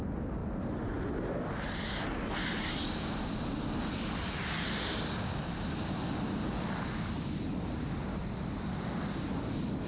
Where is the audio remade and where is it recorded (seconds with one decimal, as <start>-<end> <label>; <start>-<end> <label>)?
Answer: 0.0-9.9 recorded

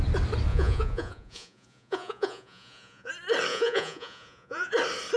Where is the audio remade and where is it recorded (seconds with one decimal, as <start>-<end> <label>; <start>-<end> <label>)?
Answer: 0.0-0.5 recorded; 0.5-3.1 remade; 3.1-3.5 recorded; 3.5-4.7 remade; 4.7-5.2 recorded

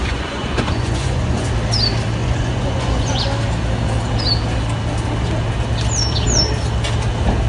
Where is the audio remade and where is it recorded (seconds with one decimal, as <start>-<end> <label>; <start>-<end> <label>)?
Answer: 0.0-1.5 remade; 1.5-2.2 recorded; 2.2-3.2 remade; 3.2-7.5 recorded

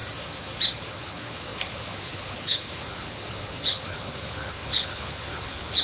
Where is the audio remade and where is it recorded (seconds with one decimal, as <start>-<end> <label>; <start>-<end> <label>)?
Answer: 0.0-0.8 recorded; 0.8-5.8 remade

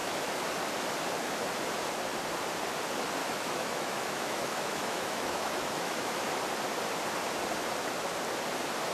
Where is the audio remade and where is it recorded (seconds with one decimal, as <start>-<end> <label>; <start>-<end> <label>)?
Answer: 0.0-0.5 remade; 0.5-3.2 recorded; 3.2-6.4 remade; 6.4-8.9 recorded

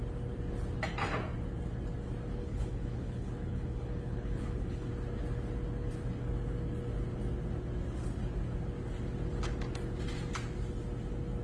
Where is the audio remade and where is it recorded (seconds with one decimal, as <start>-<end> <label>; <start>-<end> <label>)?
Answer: 0.0-2.4 recorded; 2.4-4.9 remade; 4.9-11.4 recorded

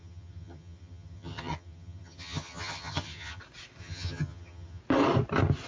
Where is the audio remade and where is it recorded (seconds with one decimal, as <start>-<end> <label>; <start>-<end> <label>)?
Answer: 0.0-3.4 remade; 3.4-3.8 recorded; 3.8-4.8 remade; 4.8-5.7 recorded

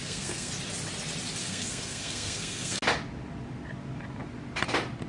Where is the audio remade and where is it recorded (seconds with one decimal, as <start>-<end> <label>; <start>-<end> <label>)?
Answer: 0.0-0.5 remade; 0.5-1.4 recorded; 1.4-2.8 remade; 2.8-5.1 recorded